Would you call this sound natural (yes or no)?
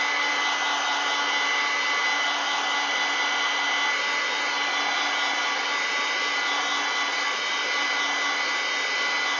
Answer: yes